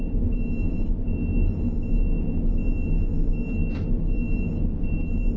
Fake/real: real